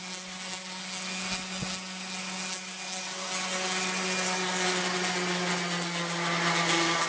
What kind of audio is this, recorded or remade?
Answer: recorded